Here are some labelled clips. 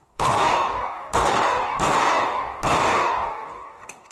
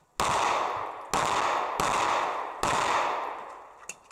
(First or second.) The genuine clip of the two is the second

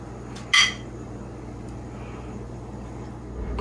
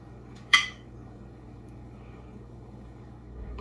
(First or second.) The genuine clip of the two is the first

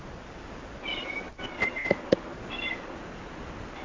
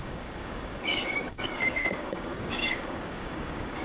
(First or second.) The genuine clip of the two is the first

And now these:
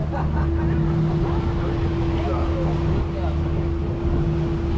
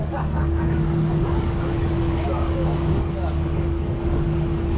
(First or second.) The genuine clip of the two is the first